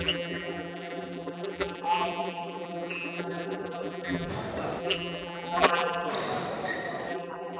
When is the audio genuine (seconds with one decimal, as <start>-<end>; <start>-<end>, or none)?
4.3-4.8; 6.1-7.1